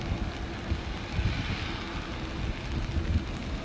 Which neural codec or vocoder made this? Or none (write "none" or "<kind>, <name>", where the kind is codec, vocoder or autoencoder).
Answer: none